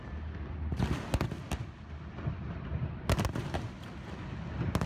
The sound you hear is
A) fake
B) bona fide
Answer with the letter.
B